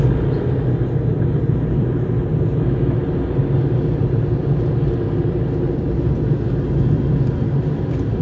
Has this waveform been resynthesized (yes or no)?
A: no